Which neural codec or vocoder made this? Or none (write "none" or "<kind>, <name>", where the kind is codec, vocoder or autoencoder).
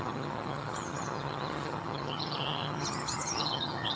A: vocoder, HiFi-GAN